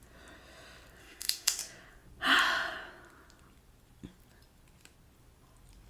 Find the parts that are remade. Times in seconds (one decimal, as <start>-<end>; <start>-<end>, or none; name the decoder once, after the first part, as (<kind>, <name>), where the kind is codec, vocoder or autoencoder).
1.0-1.6 (autoencoder, DAC-VAE)